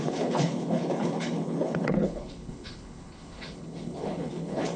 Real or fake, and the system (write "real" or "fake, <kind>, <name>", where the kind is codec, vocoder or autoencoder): fake, codec, HILCodec